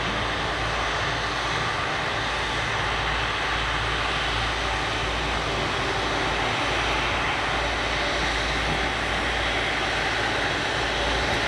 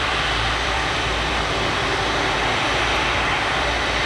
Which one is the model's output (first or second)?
second